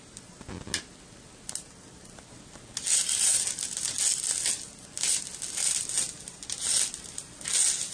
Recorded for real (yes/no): yes